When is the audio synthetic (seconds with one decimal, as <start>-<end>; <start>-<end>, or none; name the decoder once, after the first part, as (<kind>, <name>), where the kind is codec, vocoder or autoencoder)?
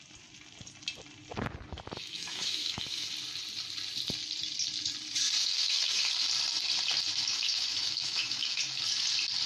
2.0-3.1 (autoencoder, DAC-VAE); 5.4-6.1; 7.3-8.8